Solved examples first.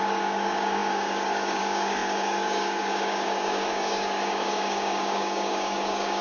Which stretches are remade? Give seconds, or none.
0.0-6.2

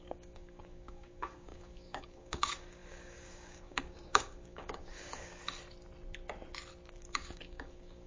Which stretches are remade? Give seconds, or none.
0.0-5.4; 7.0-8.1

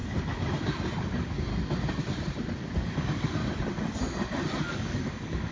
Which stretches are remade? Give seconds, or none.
1.0-1.5; 2.9-3.4; 4.7-5.5

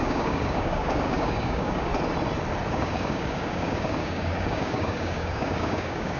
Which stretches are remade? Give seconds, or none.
0.0-1.9; 2.7-6.2

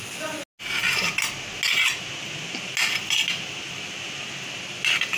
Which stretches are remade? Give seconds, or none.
none